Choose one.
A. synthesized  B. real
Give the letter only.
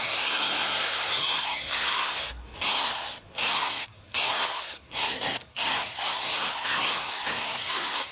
A